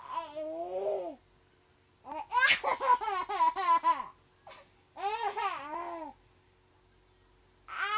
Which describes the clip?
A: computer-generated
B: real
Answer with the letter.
B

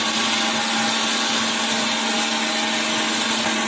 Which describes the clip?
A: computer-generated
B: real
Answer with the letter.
B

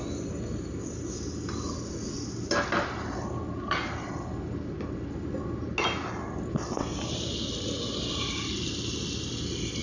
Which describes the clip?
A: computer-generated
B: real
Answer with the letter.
B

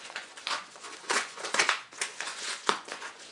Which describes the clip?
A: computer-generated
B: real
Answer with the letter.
A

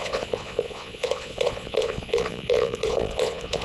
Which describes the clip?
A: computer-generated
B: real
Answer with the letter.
A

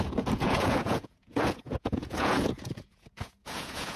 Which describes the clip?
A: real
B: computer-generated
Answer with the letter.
B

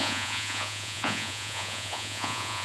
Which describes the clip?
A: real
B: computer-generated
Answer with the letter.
B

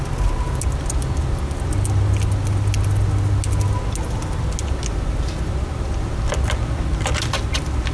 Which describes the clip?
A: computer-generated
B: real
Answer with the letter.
B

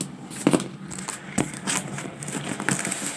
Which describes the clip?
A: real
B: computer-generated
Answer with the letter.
A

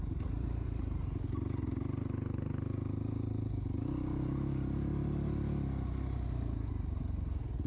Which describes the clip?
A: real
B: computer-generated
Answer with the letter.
A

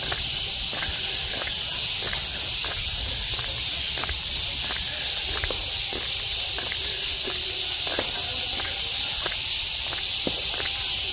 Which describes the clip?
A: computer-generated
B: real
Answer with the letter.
B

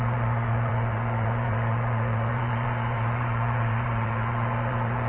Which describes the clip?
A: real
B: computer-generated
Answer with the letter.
B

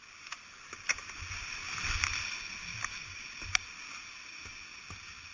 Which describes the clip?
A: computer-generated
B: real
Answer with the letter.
B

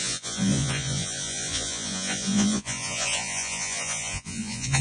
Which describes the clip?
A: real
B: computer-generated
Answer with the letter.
B